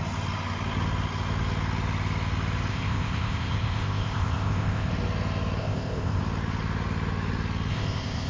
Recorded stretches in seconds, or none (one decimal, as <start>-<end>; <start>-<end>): 0.0-2.7; 4.9-5.6; 6.2-7.7